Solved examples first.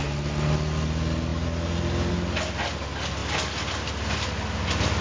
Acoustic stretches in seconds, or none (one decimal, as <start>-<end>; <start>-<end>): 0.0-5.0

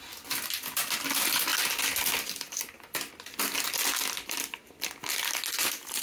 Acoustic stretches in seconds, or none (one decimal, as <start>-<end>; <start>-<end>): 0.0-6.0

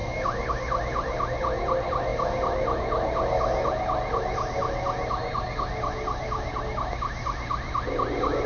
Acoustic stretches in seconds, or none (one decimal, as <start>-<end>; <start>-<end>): 0.0-8.5

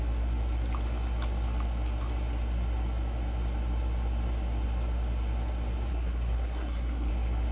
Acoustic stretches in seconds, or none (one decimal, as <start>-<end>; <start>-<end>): 0.0-5.9; 7.1-7.5

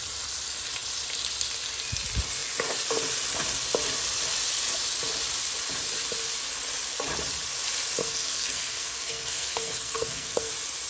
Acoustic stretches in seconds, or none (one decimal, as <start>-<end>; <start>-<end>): 0.0-8.0; 10.5-10.9

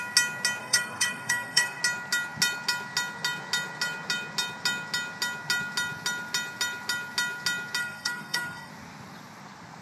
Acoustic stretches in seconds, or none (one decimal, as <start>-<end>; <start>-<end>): 0.0-0.6; 1.8-7.8; 8.7-9.8

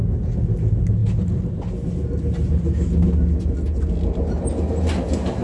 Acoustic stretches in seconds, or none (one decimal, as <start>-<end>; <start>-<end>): 0.0-5.4